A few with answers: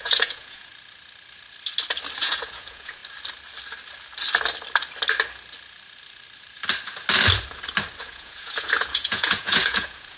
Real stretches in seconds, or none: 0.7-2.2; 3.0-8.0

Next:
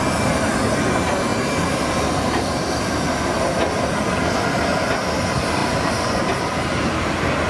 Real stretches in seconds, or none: 0.0-1.3; 1.9-5.6; 6.6-7.5

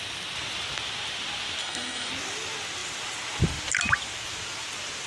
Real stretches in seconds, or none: 0.0-1.6; 2.1-5.1

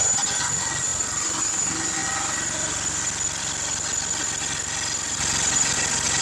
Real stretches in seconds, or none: 0.0-6.2